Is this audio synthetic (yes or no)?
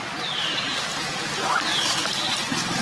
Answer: no